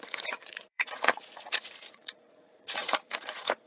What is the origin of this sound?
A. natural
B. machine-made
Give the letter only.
B